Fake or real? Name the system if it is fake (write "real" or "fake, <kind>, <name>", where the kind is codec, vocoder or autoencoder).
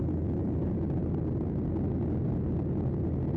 real